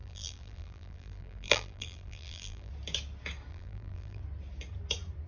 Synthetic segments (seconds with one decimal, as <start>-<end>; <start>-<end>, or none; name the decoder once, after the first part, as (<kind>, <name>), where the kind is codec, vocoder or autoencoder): 0.0-2.7 (vocoder, BigVGAN v2); 3.5-4.2